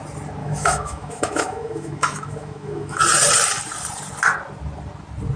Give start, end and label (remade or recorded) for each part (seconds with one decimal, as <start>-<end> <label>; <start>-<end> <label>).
0.0-0.4 recorded; 0.4-3.0 remade; 3.0-5.4 recorded

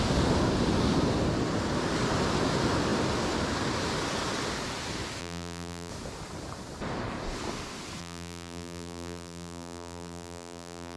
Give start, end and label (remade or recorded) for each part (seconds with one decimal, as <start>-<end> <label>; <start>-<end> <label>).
0.0-5.2 recorded; 5.2-5.9 remade; 5.9-8.0 recorded; 8.0-11.0 remade

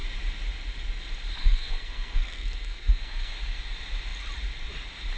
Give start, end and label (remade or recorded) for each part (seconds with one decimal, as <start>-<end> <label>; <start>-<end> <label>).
0.0-1.4 recorded; 1.4-3.6 remade; 3.6-5.2 recorded

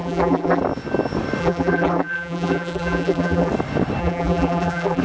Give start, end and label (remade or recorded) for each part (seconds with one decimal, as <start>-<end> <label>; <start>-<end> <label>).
0.0-0.6 remade; 0.6-1.4 recorded; 1.4-3.5 remade; 3.5-4.0 recorded; 4.0-5.0 remade